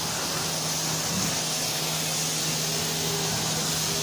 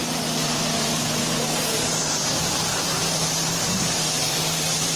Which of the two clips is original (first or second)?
first